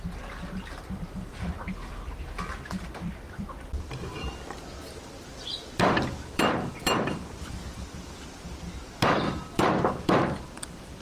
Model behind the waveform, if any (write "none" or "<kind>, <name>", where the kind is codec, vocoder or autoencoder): vocoder, BigVGAN v2